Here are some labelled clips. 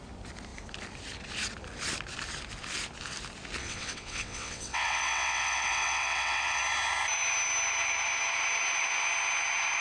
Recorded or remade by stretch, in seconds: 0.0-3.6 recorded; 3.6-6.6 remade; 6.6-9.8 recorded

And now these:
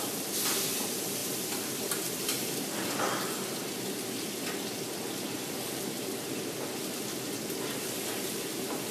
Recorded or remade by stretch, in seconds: 0.0-8.9 recorded

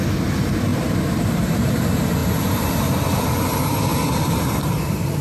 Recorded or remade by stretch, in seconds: 0.0-0.7 recorded; 0.7-1.7 remade; 1.7-2.2 recorded; 2.2-2.8 remade; 2.8-5.2 recorded

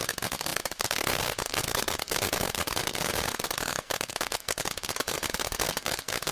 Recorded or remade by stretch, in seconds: 0.0-6.3 remade

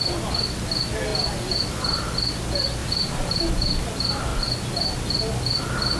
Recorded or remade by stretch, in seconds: 0.0-2.8 recorded; 2.8-3.5 remade; 3.5-6.0 recorded

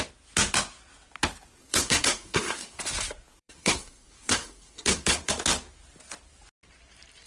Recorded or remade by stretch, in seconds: 0.0-1.6 recorded; 1.6-2.8 remade; 2.8-3.3 recorded; 3.3-5.3 remade; 5.3-7.3 recorded

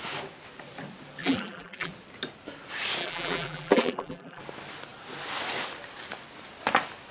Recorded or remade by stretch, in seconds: 0.0-1.2 recorded; 1.2-1.9 remade; 1.9-3.0 recorded; 3.0-4.4 remade; 4.4-7.1 recorded